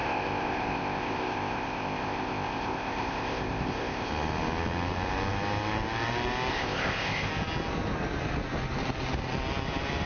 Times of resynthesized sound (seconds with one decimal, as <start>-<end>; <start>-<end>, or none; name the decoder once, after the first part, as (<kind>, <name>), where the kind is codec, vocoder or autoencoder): 0.0-4.1 (codec, ZipCodec); 6.5-7.3